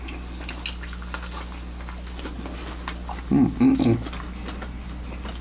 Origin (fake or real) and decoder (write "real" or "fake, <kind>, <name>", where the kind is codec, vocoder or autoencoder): real